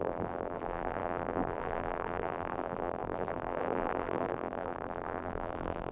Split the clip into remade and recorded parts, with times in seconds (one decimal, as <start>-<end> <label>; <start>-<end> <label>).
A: 0.0-5.9 remade